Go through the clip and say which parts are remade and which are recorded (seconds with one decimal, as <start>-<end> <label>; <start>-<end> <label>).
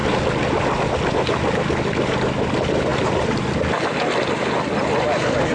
0.0-5.5 recorded